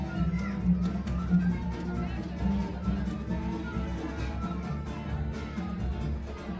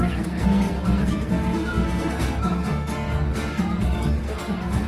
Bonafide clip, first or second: first